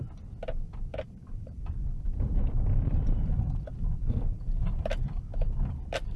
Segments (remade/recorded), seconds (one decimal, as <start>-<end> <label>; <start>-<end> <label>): 0.0-0.9 recorded; 0.9-4.6 remade; 4.6-5.3 recorded; 5.3-6.2 remade